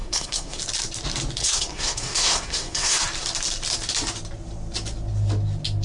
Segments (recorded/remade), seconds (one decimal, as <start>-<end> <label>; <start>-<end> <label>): 0.0-0.6 remade; 0.6-1.4 recorded; 1.4-3.0 remade; 3.0-5.8 recorded